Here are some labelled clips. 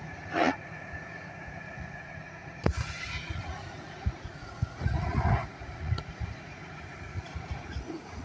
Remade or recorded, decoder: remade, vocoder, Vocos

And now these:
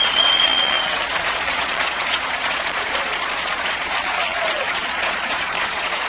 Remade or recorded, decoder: remade, vocoder, Vocos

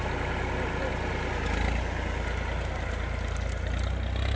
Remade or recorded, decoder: recorded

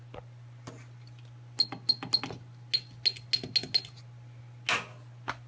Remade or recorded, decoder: recorded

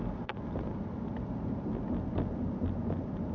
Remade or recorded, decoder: recorded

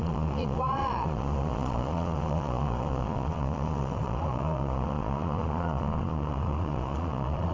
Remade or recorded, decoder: remade, vocoder, Vocos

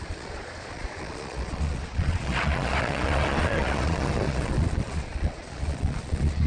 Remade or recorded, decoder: remade, vocoder, Vocos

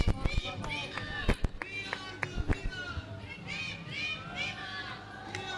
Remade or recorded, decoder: recorded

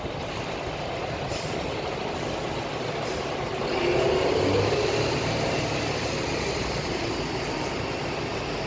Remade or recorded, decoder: recorded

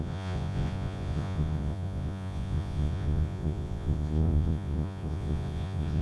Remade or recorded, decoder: remade, vocoder, Vocos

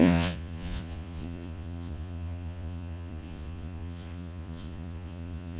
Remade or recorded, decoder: remade, vocoder, Vocos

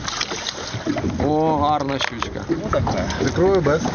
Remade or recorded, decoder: recorded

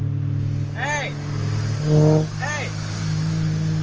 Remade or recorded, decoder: recorded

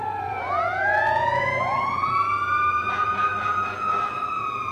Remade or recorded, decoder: remade, vocoder, Vocos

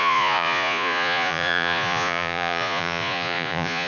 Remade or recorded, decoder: remade, vocoder, Vocos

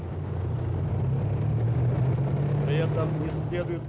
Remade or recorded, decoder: recorded